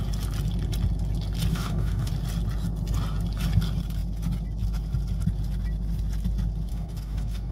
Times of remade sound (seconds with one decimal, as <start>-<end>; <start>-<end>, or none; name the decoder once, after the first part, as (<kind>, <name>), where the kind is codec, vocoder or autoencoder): 1.5-2.1 (codec, DAC); 6.7-7.5